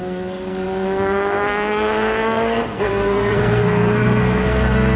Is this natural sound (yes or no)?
no